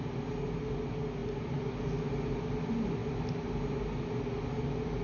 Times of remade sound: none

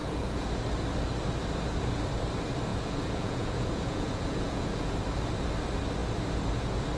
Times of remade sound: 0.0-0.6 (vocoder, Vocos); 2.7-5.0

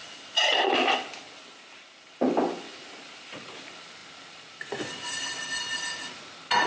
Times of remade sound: none

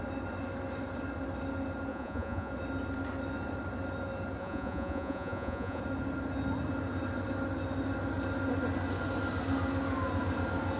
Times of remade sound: 1.9-2.5 (vocoder, Vocos); 4.4-5.8

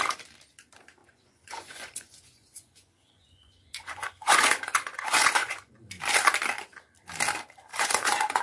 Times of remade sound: 1.0-6.0 (vocoder, Vocos); 7.7-8.4

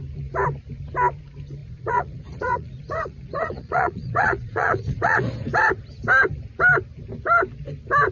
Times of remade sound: 1.6-5.3 (vocoder, Vocos)

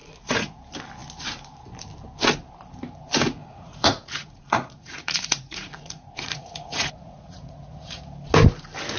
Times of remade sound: 0.0-0.6 (vocoder, Vocos); 3.4-8.0

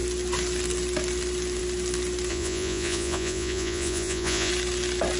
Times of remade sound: 2.3-4.5 (vocoder, Vocos)